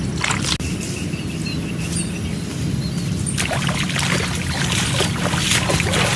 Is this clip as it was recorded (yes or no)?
yes